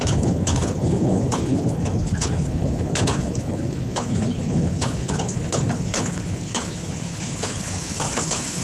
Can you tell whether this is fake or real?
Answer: fake